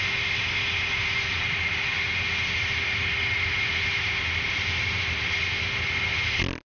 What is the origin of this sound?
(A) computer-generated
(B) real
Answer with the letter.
B